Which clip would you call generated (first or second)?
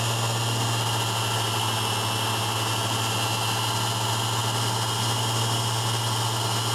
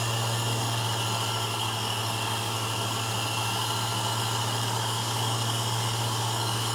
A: second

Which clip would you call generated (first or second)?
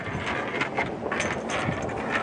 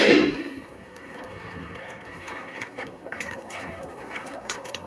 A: second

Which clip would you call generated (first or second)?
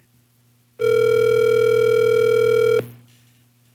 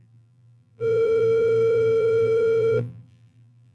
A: second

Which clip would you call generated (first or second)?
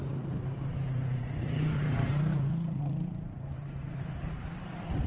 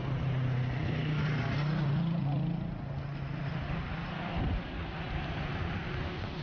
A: first